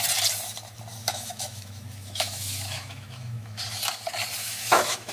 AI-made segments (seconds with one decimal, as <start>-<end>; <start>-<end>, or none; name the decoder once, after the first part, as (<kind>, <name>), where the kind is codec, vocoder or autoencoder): 1.0-3.6 (autoencoder, DAC-VAE); 4.4-5.1